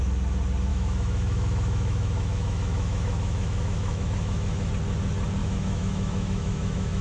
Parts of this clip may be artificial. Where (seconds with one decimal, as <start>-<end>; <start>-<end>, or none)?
0.7-4.7; 5.4-7.0